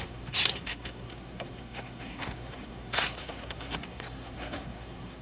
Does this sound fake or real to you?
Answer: fake